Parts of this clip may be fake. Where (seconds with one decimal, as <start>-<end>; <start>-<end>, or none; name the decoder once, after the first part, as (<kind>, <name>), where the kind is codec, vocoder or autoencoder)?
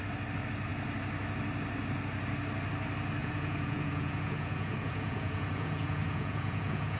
3.2-7.0 (vocoder, Vocos)